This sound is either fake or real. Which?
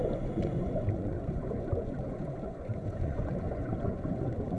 fake